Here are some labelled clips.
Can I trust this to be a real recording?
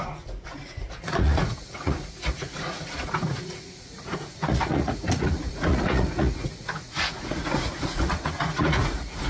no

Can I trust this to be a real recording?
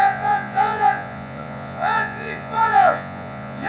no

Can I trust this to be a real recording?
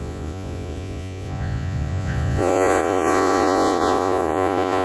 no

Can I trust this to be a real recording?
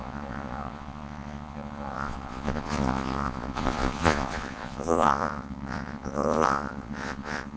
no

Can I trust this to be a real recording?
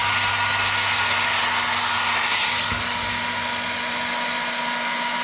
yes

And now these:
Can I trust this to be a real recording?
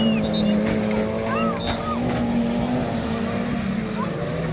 yes